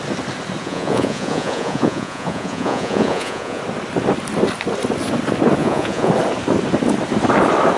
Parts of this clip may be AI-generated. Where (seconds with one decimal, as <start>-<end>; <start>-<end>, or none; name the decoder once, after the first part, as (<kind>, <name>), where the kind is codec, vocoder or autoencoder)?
0.6-3.6 (vocoder, Vocos); 5.6-6.1